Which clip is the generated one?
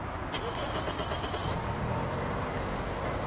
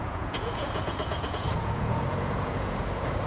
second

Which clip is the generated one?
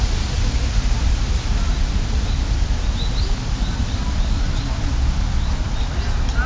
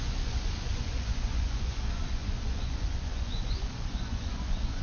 second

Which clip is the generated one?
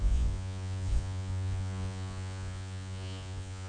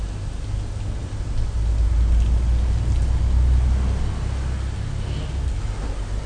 first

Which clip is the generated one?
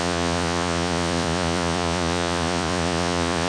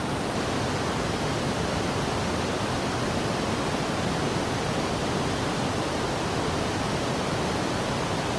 first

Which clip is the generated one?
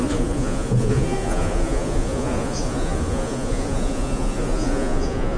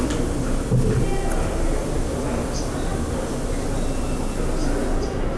first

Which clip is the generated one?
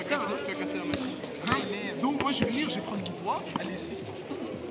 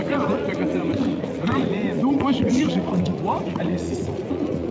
second